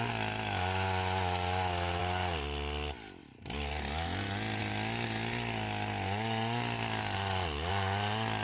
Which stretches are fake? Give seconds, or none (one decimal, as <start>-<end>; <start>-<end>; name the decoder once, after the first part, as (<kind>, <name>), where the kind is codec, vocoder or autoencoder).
none

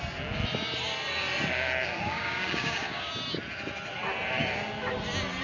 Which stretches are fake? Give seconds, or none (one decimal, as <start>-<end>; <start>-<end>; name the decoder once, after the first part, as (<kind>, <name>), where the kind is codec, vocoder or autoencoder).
1.8-3.1 (codec, DAC)

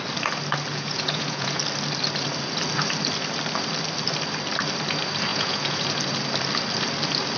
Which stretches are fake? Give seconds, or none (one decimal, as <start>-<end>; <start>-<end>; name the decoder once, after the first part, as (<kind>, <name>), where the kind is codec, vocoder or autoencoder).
0.7-1.6 (vocoder, Vocos); 5.3-5.8

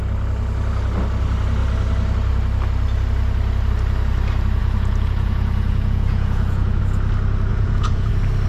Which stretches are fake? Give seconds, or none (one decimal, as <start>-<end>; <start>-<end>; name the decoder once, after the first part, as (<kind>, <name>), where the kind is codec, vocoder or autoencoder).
4.6-6.8 (vocoder, Vocos); 7.5-8.1

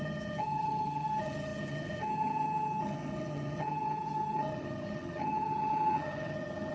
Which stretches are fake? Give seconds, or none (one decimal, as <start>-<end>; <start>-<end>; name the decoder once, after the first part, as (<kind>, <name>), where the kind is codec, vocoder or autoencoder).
0.0-6.7 (vocoder, HiFi-GAN)

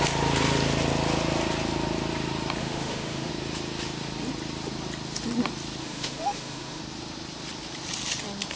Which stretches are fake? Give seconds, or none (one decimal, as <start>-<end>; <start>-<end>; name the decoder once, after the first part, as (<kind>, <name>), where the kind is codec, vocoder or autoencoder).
2.6-3.3 (autoencoder, DAC-VAE); 5.8-6.8